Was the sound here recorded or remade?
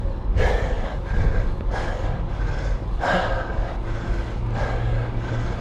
remade